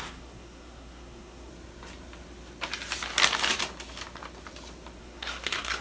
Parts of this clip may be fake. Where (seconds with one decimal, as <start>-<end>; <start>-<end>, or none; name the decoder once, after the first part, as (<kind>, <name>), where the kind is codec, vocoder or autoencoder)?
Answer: 0.0-1.5 (codec, SNAC); 5.0-5.8